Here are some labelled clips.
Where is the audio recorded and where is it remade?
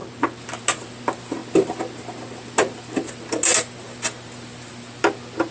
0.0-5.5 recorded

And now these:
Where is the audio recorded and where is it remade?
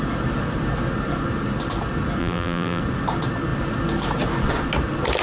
0.0-2.2 recorded; 2.2-2.8 remade; 2.8-5.2 recorded